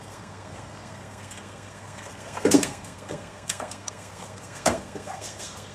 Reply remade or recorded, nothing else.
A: remade